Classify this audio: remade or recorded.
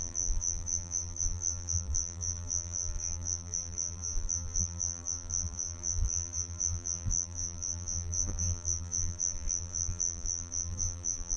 remade